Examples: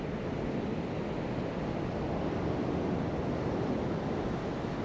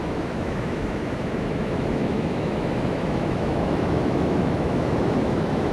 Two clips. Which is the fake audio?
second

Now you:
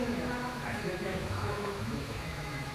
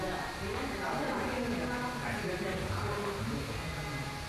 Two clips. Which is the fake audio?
first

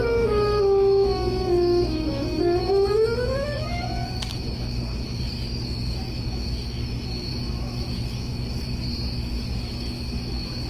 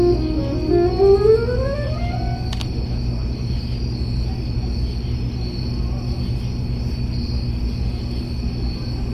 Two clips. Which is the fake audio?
first